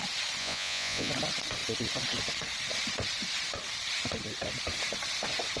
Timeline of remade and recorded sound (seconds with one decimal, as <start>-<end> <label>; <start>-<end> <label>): 0.0-0.4 recorded; 0.4-1.1 remade; 1.1-5.6 recorded